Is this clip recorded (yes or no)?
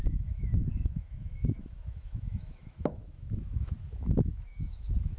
no